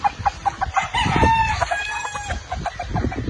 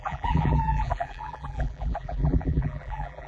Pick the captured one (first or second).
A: first